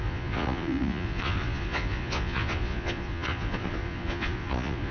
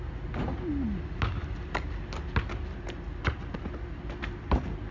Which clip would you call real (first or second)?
second